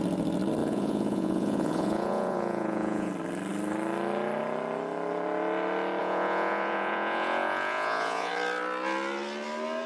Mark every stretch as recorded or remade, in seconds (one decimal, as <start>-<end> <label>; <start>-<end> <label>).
0.0-0.6 recorded; 0.6-3.1 remade; 3.1-6.0 recorded; 6.0-8.3 remade; 8.3-9.9 recorded